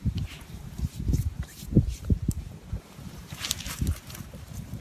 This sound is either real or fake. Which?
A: fake